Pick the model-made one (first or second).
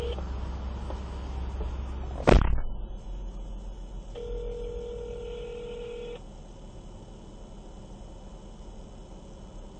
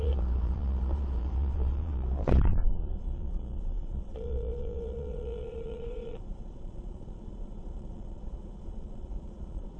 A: second